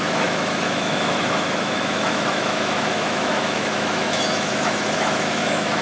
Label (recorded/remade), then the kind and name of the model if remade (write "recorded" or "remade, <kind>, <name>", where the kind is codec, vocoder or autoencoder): remade, autoencoder, DAC-VAE